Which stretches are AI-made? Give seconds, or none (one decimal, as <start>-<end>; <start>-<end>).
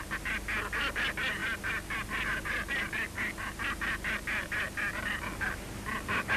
none